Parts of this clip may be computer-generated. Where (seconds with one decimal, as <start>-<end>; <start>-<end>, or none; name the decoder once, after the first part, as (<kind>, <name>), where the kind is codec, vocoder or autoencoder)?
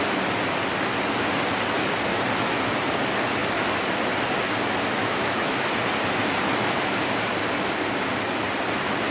5.0-5.7 (autoencoder, DAC-VAE)